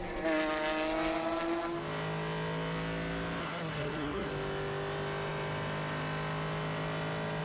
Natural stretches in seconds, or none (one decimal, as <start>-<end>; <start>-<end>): 0.0-3.4; 4.3-7.4